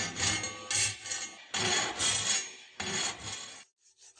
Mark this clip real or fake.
real